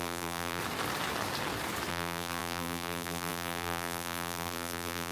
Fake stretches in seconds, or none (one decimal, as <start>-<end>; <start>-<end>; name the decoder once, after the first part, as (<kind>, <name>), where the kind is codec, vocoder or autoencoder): 0.0-0.6 (vocoder, BigVGAN v2); 1.9-5.1